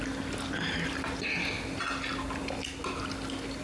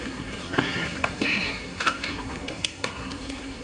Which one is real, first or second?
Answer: first